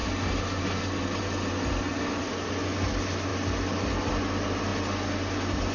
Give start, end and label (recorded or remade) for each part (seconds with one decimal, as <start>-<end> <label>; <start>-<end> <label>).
0.0-5.7 recorded

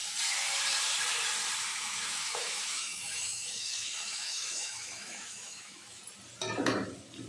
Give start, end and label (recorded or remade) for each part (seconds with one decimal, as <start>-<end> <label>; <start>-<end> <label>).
0.0-1.7 recorded; 1.7-6.0 remade; 6.0-7.3 recorded

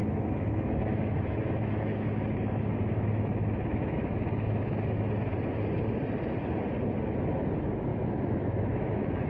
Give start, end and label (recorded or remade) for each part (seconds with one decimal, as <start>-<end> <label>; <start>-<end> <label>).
0.0-5.0 remade; 5.0-7.9 recorded; 7.9-9.3 remade

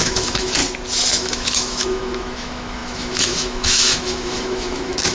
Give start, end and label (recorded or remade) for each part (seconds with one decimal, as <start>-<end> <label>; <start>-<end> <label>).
0.0-0.6 remade; 0.6-1.1 recorded; 1.1-5.1 remade

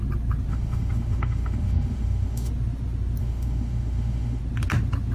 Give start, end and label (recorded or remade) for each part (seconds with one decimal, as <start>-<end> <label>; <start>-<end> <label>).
0.0-0.5 recorded; 0.5-2.5 remade; 2.5-3.2 recorded; 3.2-4.4 remade; 4.4-5.1 recorded

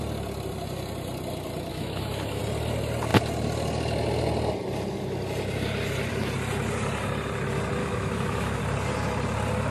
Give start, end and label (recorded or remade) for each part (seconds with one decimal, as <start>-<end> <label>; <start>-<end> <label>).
0.0-1.7 recorded; 1.7-2.4 remade; 2.4-7.8 recorded; 7.8-8.6 remade; 8.6-9.7 recorded